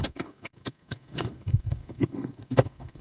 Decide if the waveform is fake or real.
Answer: fake